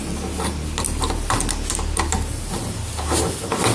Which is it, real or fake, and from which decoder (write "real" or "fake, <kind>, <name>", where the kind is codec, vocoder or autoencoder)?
real